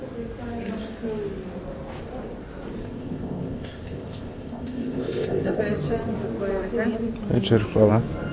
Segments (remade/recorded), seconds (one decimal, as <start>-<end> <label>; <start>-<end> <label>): 0.0-2.8 recorded; 2.8-5.6 remade; 5.6-8.3 recorded